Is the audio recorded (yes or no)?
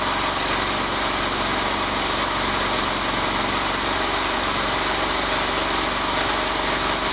yes